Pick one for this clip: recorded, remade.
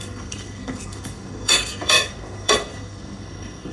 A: remade